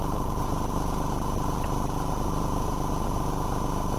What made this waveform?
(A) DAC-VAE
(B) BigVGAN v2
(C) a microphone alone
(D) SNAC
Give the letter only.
C